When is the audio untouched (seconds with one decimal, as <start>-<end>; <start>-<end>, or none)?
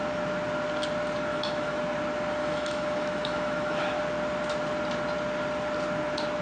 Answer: 0.0-1.3; 1.8-2.4; 4.0-6.4